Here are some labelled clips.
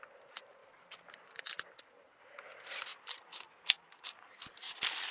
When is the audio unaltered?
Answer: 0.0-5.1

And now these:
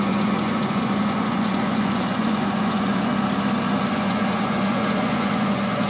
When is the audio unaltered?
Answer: 3.1-3.9